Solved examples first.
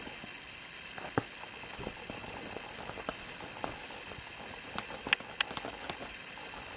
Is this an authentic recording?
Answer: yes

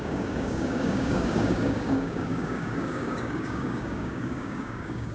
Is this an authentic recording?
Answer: no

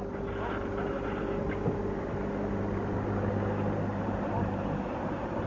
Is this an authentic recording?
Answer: yes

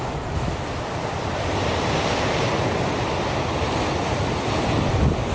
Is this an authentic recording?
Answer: yes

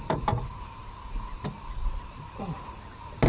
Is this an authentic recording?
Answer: yes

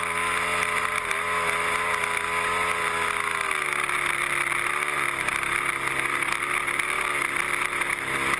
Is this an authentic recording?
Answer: yes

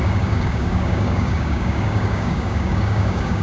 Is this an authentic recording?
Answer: no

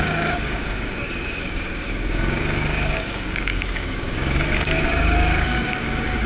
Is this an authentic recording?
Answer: no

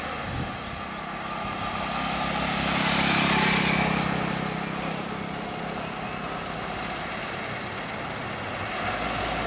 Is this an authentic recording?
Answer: yes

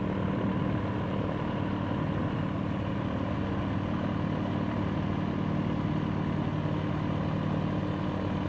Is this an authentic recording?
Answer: yes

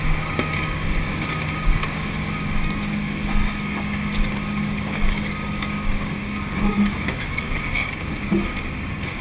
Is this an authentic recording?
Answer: no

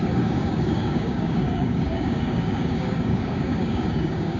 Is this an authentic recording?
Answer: no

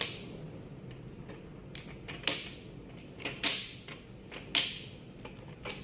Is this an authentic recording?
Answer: yes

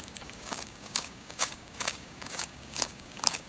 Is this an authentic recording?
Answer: no